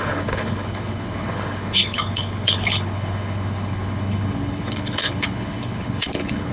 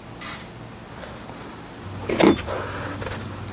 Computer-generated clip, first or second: first